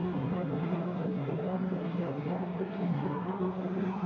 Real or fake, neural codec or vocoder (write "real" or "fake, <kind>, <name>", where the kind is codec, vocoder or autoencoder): fake, codec, SNAC